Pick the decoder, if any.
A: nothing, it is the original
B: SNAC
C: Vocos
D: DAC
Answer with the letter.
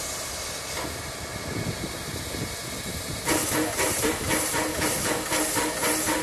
A